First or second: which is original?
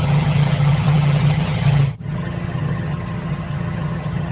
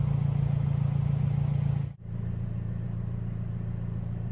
second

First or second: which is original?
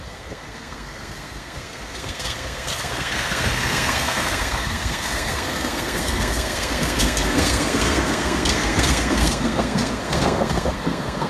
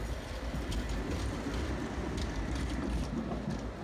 second